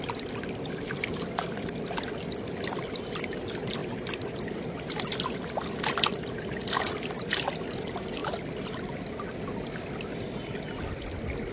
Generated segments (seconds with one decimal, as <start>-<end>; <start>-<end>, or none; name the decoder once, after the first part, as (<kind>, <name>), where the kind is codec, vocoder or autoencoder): none